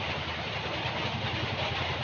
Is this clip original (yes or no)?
no